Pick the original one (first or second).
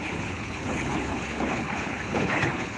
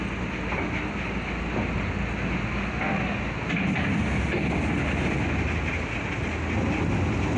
second